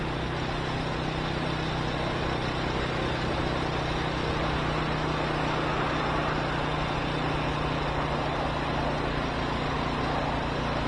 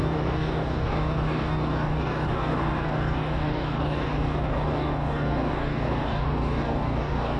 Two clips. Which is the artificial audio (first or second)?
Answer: second